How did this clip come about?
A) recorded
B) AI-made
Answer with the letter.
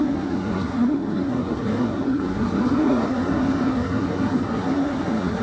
B